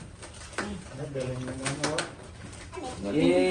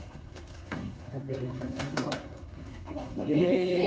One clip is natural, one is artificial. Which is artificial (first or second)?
second